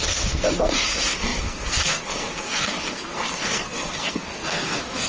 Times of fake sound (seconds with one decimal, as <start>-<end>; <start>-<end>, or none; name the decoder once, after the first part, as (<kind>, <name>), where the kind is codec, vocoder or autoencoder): 0.0-5.1 (codec, SNAC)